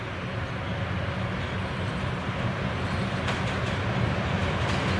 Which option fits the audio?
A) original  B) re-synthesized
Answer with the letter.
A